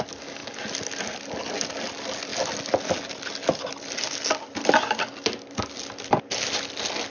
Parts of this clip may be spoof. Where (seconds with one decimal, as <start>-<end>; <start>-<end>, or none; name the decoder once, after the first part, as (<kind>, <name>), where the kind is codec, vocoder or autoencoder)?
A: none